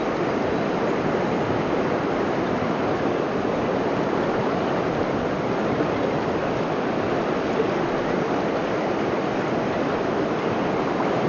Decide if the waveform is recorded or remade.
recorded